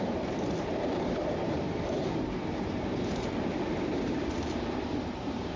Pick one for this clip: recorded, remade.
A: remade